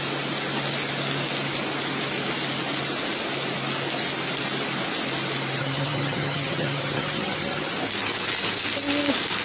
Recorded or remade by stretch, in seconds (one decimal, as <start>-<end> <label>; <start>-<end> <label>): 0.0-5.6 recorded; 5.6-7.7 remade; 7.7-9.4 recorded